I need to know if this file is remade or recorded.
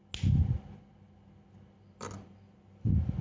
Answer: recorded